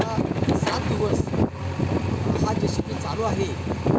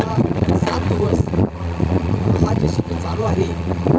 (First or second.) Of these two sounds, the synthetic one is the second